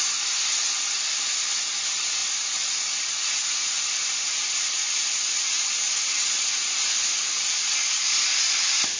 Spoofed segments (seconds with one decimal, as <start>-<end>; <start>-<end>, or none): none